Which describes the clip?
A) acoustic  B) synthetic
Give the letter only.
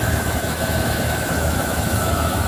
B